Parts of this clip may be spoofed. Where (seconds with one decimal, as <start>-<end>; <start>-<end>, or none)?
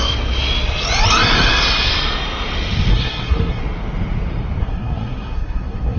2.9-3.6; 4.6-6.0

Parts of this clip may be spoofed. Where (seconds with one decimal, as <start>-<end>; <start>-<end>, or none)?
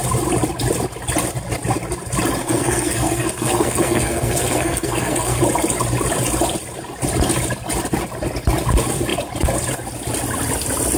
2.4-5.4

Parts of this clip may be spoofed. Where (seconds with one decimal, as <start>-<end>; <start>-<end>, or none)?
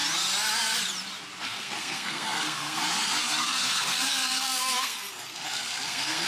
1.4-6.3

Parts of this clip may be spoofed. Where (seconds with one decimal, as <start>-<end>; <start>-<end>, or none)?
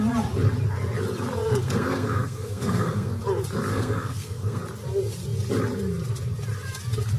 1.5-3.2; 3.7-4.6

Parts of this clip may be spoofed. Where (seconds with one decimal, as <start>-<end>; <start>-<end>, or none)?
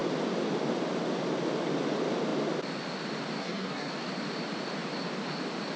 3.4-3.9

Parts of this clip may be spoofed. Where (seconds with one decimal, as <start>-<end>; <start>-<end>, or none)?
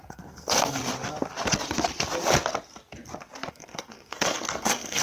0.0-0.8; 3.5-5.0